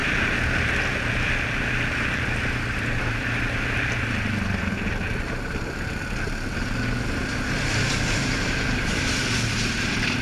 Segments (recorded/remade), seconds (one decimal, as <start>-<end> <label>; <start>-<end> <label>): 0.0-10.2 recorded

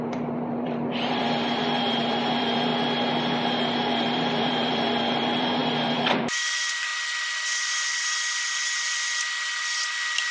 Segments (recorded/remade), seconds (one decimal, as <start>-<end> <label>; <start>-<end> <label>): 0.0-2.7 remade; 2.7-3.9 recorded; 3.9-10.3 remade

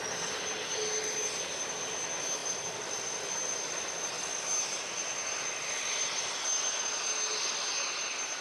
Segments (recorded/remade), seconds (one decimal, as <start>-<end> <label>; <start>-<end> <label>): 0.0-2.4 recorded; 2.4-2.9 remade; 2.9-8.4 recorded